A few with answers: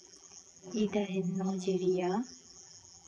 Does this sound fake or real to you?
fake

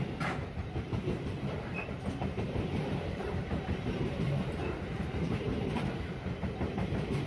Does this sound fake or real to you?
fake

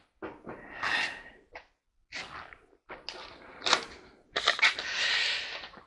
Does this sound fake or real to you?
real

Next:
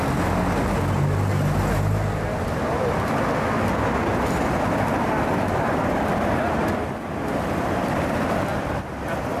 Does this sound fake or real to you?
real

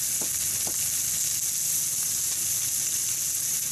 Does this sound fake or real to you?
real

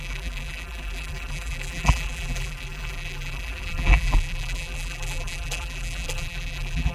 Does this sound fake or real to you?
fake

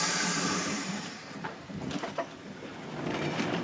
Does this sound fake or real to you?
fake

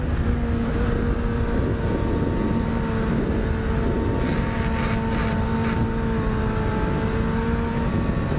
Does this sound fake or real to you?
real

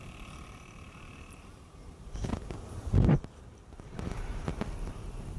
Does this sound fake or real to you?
fake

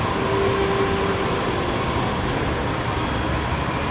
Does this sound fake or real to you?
real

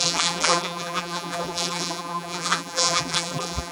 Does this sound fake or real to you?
fake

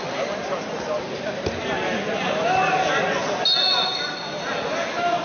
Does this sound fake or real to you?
real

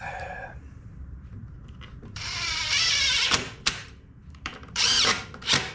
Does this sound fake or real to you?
fake